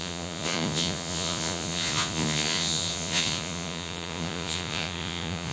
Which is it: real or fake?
fake